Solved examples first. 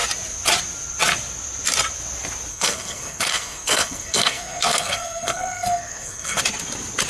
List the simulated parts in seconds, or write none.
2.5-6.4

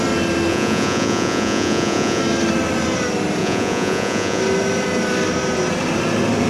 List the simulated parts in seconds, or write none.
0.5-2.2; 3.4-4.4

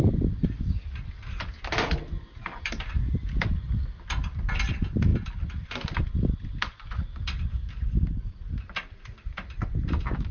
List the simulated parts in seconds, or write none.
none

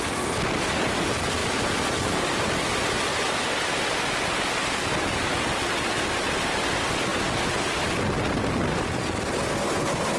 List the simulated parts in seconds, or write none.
none